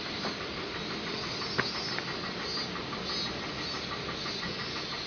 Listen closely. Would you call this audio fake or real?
real